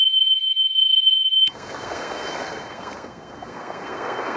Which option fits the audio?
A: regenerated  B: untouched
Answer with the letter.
A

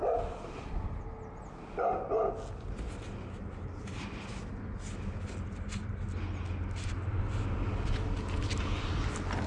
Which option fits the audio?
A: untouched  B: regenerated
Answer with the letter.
A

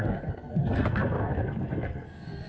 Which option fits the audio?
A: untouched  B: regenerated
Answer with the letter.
B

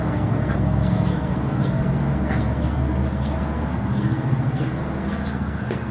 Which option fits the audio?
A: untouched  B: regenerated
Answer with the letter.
B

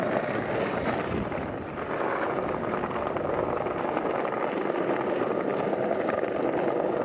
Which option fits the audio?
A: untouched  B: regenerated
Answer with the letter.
A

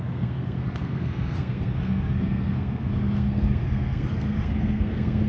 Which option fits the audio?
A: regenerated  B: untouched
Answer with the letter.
A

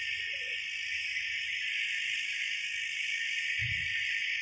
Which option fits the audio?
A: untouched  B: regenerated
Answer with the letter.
A